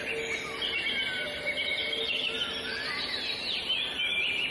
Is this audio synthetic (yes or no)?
no